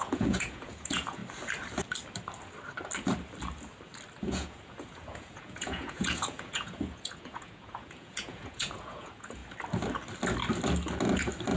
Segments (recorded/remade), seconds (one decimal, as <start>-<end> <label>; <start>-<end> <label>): 0.0-1.2 remade; 1.2-4.2 recorded; 4.2-9.4 remade; 9.4-11.6 recorded